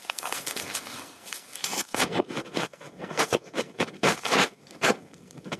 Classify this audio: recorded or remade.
remade